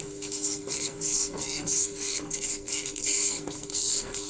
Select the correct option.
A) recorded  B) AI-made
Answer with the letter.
B